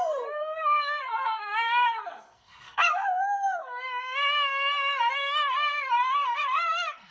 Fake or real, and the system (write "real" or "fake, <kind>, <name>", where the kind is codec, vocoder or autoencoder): fake, codec, SNAC